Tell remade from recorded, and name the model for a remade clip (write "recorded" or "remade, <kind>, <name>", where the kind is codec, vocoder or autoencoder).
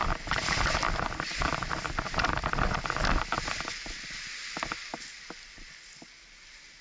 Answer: recorded